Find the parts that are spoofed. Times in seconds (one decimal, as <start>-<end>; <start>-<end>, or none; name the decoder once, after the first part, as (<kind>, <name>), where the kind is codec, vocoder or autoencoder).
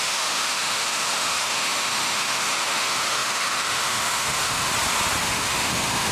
0.0-4.7 (autoencoder, DAC-VAE); 5.2-6.1